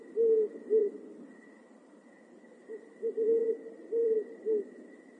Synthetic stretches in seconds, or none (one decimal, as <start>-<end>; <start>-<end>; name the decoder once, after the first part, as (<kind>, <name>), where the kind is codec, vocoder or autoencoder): 0.8-2.5 (vocoder, BigVGAN v2); 3.4-4.7